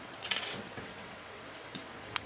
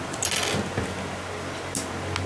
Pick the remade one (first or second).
first